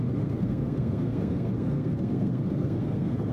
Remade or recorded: remade